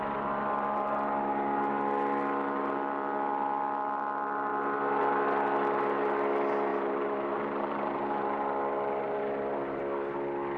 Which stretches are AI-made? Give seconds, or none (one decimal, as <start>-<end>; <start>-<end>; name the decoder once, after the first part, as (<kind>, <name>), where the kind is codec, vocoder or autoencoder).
6.7-9.8 (vocoder, BigVGAN v2)